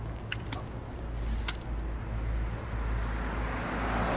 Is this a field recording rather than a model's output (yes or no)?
yes